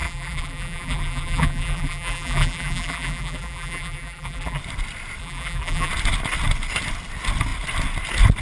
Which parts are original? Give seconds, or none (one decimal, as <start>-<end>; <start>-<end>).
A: 4.6-5.2; 5.9-8.4

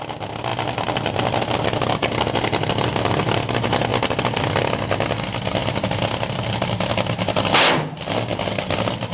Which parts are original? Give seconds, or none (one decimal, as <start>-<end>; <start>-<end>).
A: 0.0-0.5; 1.4-5.6; 6.9-9.1

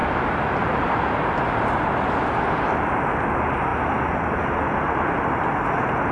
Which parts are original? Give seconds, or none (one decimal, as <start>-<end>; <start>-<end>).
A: 0.0-6.1